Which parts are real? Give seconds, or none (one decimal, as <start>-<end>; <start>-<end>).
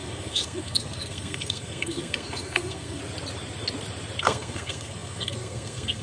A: 3.0-4.2